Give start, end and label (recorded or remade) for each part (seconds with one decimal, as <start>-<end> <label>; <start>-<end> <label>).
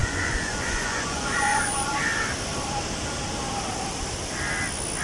0.0-1.9 remade; 1.9-5.0 recorded